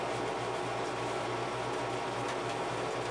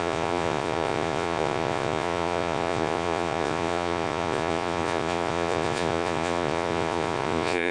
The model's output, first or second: second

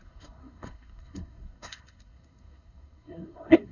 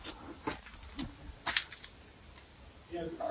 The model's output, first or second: first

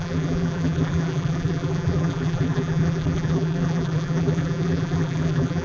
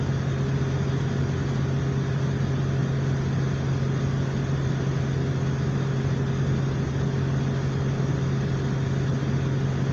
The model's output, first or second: first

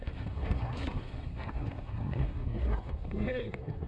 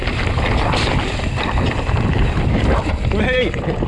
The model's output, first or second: first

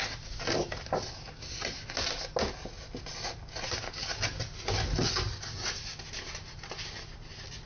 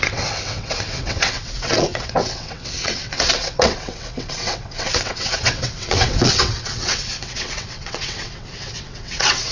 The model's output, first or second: second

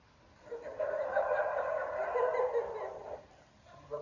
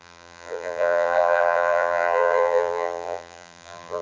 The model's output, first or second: second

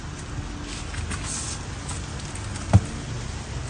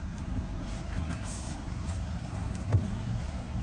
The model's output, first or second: second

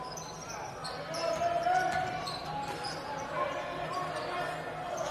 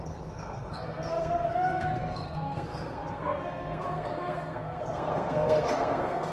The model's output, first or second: second